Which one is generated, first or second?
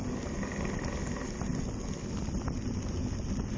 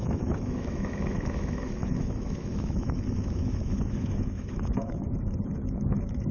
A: second